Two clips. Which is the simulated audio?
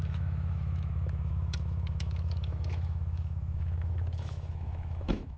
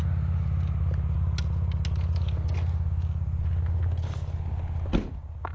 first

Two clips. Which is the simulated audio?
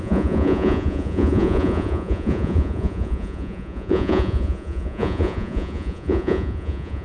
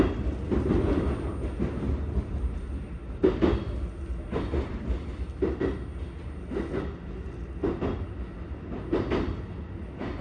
first